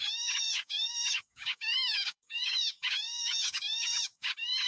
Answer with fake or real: fake